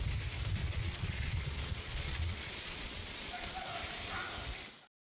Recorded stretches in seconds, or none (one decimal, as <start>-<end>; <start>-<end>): 0.0-0.6; 3.7-5.2